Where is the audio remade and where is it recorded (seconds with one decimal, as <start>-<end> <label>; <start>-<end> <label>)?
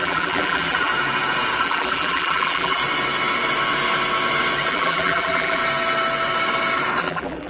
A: 0.0-0.9 remade; 0.9-1.6 recorded; 1.6-2.8 remade; 2.8-4.7 recorded; 4.7-5.6 remade; 5.6-7.0 recorded; 7.0-7.5 remade